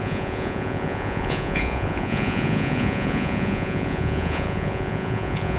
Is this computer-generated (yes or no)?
yes